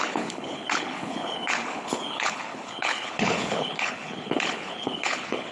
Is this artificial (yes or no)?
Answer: yes